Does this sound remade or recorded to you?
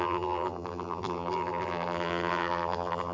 remade